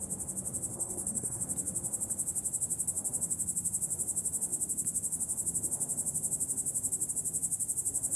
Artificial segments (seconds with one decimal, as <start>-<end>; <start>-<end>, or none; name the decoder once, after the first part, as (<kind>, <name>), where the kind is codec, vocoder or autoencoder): 0.7-1.4 (codec, SNAC)